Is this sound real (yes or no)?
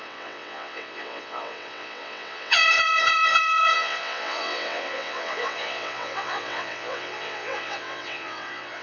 no